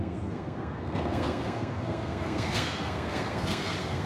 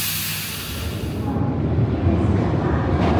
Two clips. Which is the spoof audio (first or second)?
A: first